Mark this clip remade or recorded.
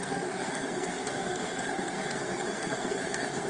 remade